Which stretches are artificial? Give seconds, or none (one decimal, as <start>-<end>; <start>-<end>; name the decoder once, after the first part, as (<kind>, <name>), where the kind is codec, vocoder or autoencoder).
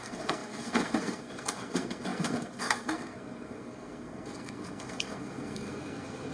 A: 0.0-6.3 (codec, SNAC)